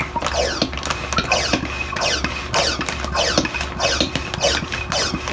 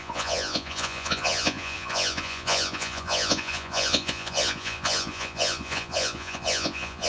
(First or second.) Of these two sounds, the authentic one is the first